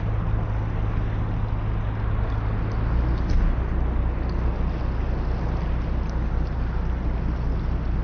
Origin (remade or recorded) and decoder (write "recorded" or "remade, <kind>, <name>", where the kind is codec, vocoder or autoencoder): recorded